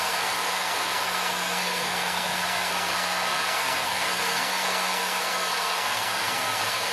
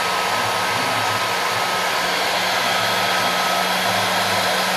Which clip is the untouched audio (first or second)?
second